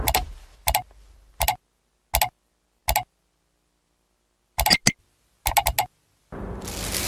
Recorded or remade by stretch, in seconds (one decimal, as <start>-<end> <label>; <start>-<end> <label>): 0.0-7.1 recorded

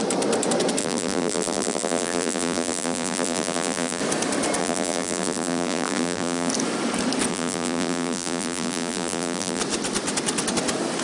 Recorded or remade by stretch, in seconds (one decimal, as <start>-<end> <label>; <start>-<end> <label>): 0.0-0.8 recorded; 0.8-4.0 remade; 4.0-4.6 recorded; 4.6-6.5 remade; 6.5-7.3 recorded; 7.3-9.6 remade; 9.6-11.0 recorded

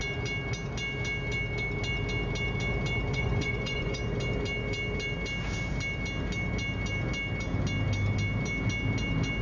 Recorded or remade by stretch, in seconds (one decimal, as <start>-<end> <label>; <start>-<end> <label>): 0.0-3.1 recorded; 3.1-4.0 remade; 4.0-9.4 recorded

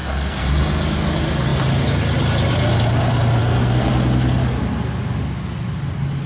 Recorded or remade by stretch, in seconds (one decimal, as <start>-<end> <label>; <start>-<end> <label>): 0.0-0.5 remade; 0.5-3.4 recorded; 3.4-3.9 remade; 3.9-6.3 recorded